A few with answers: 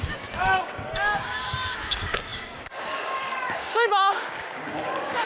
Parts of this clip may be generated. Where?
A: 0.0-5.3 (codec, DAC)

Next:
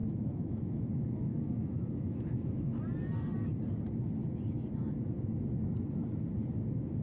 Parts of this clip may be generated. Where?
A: 0.0-0.9 (autoencoder, DAC-VAE); 1.3-2.8

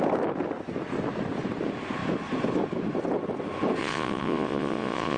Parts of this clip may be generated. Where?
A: 3.8-5.2 (vocoder, Vocos)

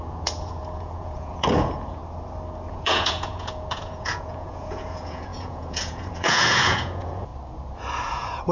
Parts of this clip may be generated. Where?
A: 0.0-2.0 (vocoder, Vocos); 2.7-7.3; 8.0-8.5

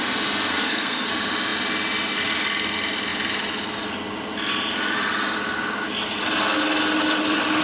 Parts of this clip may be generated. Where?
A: 0.5-1.1 (codec, SNAC)

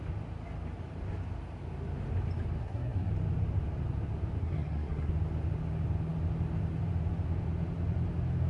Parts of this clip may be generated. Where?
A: 2.6-3.1 (codec, SNAC); 4.4-5.1